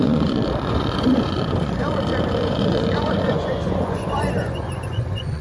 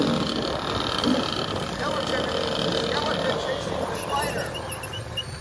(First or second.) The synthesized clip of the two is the first